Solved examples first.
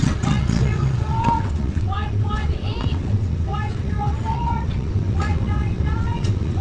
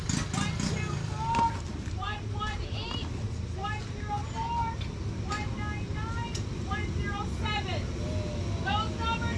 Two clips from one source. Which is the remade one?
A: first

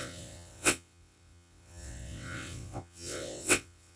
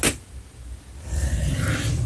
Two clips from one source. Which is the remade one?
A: first